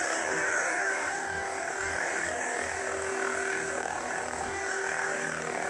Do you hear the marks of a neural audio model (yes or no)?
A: yes